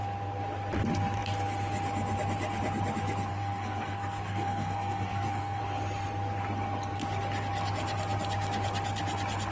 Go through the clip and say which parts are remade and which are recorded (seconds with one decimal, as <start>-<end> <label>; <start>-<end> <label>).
0.0-3.3 recorded; 3.3-5.6 remade; 5.6-9.5 recorded